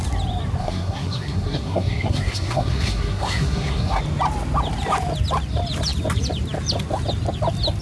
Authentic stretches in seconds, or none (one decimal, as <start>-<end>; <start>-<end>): 0.0-0.6; 4.0-7.8